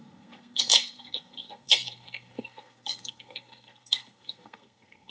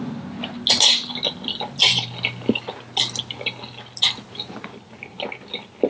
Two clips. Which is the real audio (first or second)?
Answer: second